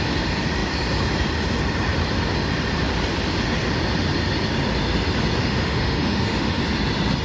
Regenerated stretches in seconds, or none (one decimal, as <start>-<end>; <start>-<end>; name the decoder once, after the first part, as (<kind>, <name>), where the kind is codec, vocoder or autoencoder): 5.4-6.6 (autoencoder, DAC-VAE)